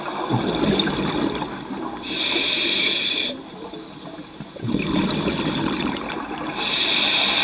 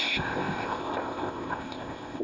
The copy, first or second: second